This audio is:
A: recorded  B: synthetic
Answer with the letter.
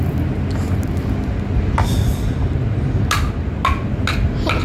A